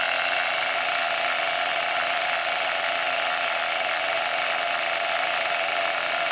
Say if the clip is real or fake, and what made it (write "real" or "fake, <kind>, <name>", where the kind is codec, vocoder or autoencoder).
real